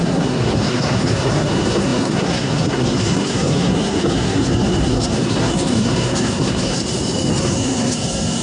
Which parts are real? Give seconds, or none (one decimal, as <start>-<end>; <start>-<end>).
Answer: 6.8-7.4